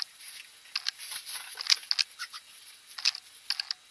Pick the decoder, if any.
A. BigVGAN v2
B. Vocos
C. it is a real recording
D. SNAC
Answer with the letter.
C